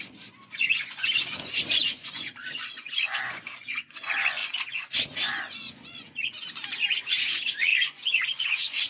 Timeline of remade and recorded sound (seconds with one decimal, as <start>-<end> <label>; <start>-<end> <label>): 0.0-6.6 remade; 6.6-7.3 recorded; 7.3-8.9 remade